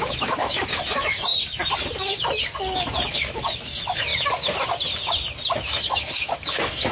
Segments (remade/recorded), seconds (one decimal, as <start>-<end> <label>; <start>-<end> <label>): 0.0-1.3 remade; 1.3-1.9 recorded; 1.9-4.1 remade; 4.1-5.5 recorded; 5.5-6.9 remade